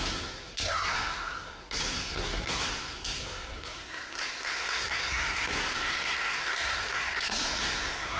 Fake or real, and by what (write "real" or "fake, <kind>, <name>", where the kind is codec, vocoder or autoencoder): fake, codec, SNAC